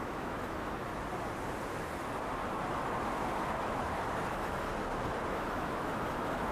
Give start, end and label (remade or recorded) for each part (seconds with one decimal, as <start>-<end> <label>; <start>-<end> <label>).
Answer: 0.0-0.9 remade; 0.9-4.3 recorded; 4.3-4.7 remade; 4.7-5.3 recorded; 5.3-6.5 remade